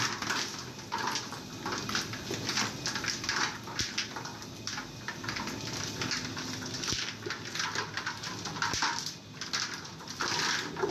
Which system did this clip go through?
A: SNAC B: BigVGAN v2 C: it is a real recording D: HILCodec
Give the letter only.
C